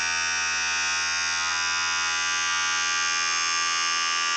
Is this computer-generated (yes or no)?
no